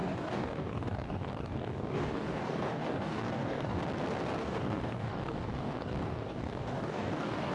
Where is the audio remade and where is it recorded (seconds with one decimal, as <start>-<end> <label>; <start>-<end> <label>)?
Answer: 0.0-3.8 remade; 3.8-4.4 recorded; 4.4-7.5 remade